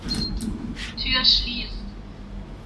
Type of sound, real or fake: real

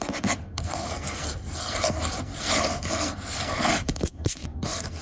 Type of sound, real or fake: fake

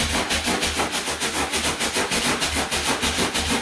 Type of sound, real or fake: real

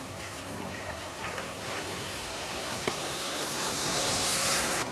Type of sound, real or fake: fake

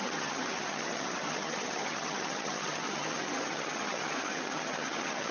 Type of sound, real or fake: fake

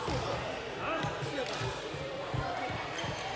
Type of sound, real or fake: real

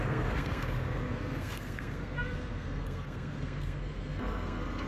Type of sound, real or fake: fake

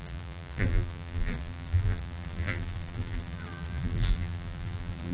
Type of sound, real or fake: fake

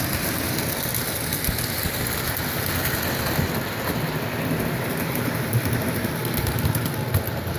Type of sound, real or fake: real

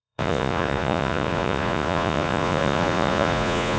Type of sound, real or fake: fake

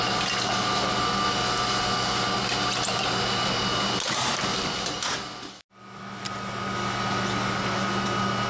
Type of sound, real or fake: real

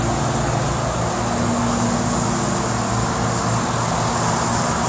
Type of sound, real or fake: real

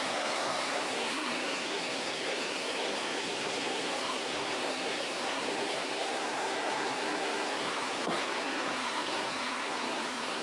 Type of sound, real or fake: fake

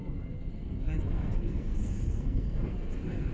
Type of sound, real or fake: fake